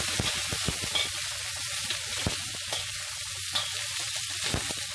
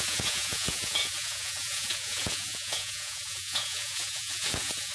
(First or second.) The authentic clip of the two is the first